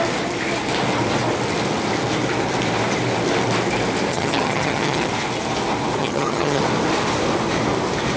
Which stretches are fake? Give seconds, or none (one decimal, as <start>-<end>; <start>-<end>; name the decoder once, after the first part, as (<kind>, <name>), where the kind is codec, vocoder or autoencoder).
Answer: 4.1-5.1 (vocoder, HiFi-GAN); 6.0-6.6

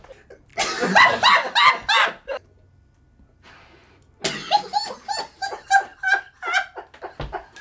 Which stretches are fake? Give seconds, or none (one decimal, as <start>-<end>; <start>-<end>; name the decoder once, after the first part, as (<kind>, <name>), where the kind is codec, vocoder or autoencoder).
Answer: none

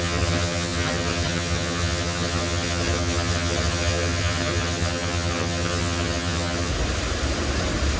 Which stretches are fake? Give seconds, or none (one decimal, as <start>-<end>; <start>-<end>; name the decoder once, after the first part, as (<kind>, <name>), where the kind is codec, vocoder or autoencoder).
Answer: 0.0-6.7 (vocoder, HiFi-GAN)

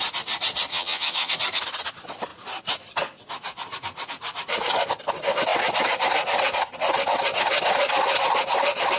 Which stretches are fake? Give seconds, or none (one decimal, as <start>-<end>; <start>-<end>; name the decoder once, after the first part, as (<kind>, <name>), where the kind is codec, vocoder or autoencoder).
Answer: 0.7-1.3 (vocoder, HiFi-GAN)

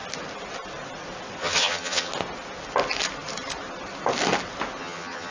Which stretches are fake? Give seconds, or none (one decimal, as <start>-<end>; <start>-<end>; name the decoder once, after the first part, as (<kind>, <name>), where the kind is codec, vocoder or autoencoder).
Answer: 1.4-2.1 (vocoder, HiFi-GAN); 4.8-5.3

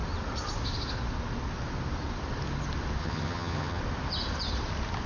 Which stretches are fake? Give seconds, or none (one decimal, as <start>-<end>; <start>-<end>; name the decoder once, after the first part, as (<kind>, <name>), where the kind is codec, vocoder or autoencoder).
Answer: 3.0-3.8 (vocoder, HiFi-GAN)

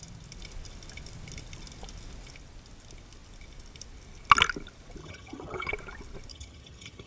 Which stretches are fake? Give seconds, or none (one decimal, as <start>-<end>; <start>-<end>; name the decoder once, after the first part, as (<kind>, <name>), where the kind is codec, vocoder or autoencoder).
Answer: 5.0-5.7 (vocoder, HiFi-GAN); 6.3-7.1